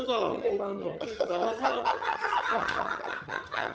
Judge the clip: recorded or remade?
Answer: remade